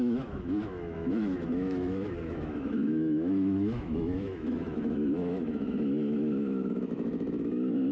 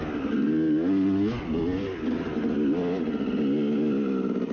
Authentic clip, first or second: second